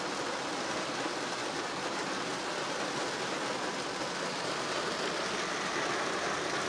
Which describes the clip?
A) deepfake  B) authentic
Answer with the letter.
B